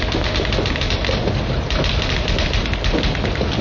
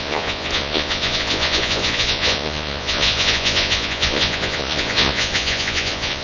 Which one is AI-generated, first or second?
second